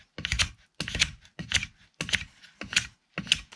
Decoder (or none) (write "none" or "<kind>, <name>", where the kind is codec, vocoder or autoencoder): none